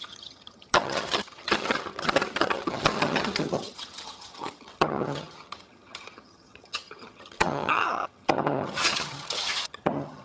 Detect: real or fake fake